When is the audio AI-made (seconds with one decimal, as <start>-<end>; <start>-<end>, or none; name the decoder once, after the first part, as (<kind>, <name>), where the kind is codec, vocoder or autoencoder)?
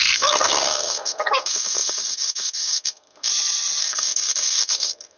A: 0.0-3.3 (codec, SNAC); 3.8-5.2